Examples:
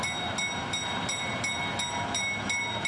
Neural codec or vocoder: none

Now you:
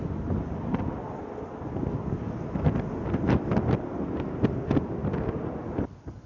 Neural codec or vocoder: none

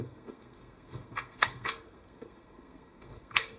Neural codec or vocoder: codec, SNAC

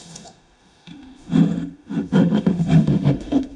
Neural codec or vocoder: autoencoder, DAC-VAE